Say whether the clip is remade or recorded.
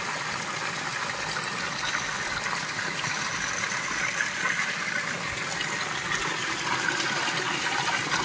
recorded